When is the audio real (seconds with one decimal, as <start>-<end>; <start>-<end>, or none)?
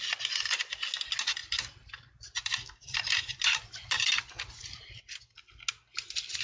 0.0-1.4; 5.2-6.4